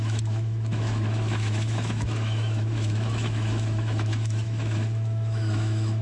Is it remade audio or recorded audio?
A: remade